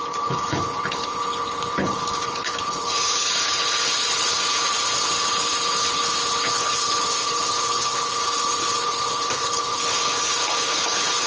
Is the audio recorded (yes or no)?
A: no